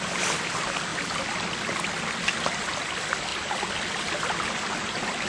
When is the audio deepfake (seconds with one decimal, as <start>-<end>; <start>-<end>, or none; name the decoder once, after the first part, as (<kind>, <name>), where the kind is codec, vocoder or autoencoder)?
none